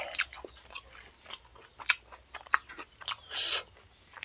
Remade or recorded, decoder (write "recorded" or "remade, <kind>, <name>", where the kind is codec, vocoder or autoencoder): recorded